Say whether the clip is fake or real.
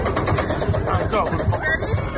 real